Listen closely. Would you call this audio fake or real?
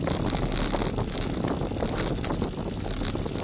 real